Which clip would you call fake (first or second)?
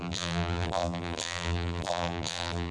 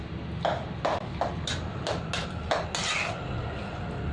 first